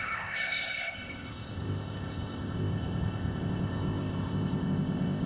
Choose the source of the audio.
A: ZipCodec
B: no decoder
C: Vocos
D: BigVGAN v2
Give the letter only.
A